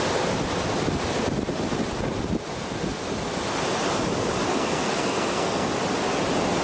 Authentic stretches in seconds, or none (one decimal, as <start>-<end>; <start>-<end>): 0.0-4.5; 5.7-6.6